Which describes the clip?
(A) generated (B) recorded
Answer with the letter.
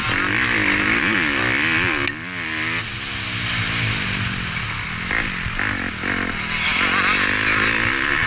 B